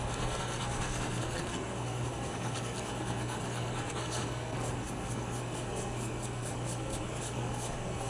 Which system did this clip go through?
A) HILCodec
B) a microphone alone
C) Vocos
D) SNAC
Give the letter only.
D